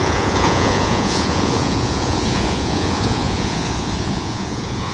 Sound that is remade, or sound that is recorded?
remade